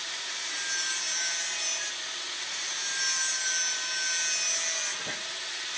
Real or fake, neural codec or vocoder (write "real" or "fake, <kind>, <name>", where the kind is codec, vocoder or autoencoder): real